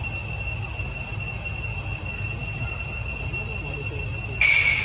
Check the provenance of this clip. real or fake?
real